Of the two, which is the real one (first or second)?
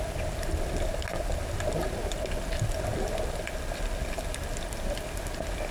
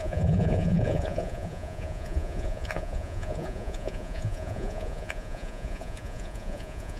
first